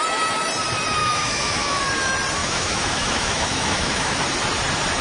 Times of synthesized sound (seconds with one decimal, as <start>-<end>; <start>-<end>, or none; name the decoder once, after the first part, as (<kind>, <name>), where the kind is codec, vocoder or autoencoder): 1.0-1.8 (autoencoder, DAC-VAE); 2.4-4.2